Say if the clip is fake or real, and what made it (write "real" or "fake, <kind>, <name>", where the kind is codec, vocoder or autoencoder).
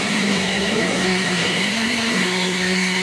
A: fake, codec, SNAC